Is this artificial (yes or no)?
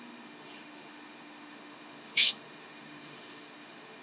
yes